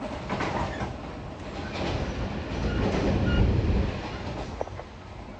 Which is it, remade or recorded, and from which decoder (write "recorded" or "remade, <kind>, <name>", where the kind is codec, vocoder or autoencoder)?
recorded